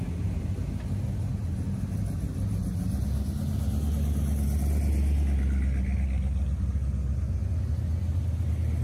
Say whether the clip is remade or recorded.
recorded